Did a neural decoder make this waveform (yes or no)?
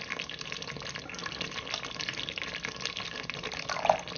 no